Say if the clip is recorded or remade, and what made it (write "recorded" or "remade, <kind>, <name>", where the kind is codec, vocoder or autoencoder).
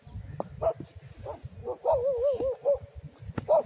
recorded